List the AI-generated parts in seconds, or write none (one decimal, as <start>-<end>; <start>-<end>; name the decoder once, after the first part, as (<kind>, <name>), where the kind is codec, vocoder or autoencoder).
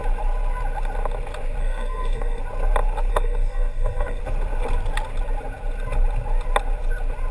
1.6-2.4 (codec, SNAC); 3.1-4.2